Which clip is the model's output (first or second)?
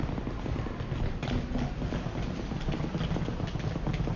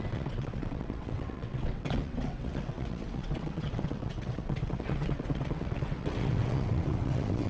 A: second